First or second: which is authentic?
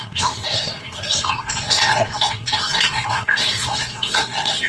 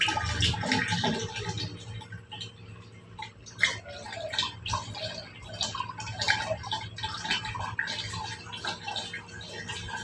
second